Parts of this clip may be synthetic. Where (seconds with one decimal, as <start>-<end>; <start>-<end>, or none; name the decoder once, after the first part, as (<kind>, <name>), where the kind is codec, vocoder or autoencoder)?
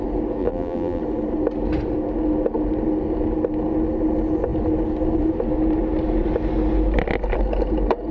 0.4-1.0 (vocoder, BigVGAN v2)